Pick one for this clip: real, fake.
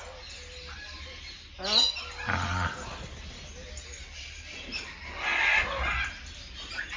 real